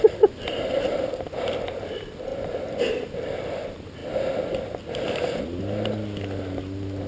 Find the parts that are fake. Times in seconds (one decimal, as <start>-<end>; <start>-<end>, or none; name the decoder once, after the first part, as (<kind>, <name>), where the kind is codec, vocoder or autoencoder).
none